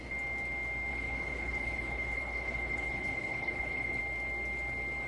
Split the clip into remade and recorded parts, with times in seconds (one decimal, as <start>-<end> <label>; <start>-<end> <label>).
0.0-0.9 recorded; 0.9-4.0 remade; 4.0-5.1 recorded